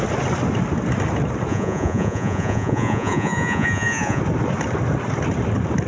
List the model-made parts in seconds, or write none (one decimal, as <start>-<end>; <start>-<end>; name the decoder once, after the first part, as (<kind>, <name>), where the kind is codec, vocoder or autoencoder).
1.5-4.2 (vocoder, Vocos)